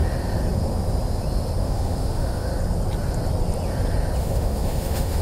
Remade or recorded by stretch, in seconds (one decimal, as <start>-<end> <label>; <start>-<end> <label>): 0.0-1.6 recorded; 1.6-2.5 remade; 2.5-4.2 recorded; 4.2-5.2 remade